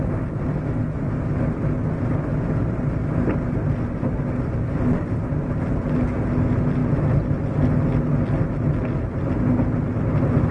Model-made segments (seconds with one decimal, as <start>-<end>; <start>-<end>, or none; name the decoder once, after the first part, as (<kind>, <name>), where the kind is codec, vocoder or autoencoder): none